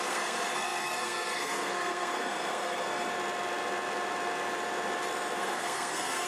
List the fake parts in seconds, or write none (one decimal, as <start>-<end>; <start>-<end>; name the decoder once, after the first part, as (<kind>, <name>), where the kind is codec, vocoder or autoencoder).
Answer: 0.0-3.1 (codec, SNAC); 5.4-6.3